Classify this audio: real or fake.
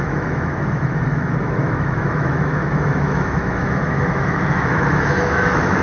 fake